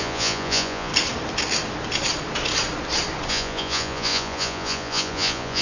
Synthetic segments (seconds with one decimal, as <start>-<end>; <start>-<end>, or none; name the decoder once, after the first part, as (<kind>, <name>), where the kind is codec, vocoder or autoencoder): 0.0-0.9 (vocoder, Vocos); 3.3-5.6

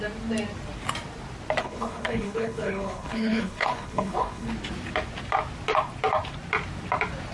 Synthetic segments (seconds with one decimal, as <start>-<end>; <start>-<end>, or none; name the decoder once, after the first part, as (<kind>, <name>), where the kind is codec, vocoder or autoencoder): 1.6-4.5 (codec, HILCodec)

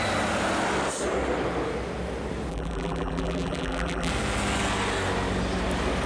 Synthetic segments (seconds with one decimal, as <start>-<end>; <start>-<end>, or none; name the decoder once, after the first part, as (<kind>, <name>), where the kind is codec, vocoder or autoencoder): 2.5-4.1 (vocoder, BigVGAN v2)

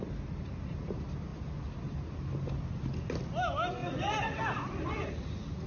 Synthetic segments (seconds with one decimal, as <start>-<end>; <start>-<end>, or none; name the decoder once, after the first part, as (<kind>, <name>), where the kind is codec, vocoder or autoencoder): 3.8-5.1 (vocoder, BigVGAN v2)

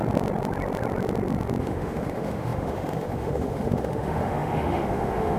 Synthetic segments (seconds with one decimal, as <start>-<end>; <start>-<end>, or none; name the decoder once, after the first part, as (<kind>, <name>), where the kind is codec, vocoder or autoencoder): 1.6-5.4 (autoencoder, DAC-VAE)